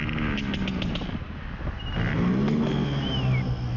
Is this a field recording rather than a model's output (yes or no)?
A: yes